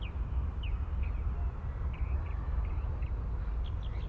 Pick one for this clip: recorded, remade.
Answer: recorded